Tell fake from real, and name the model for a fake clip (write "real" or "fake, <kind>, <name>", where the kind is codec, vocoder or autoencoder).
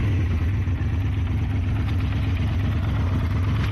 real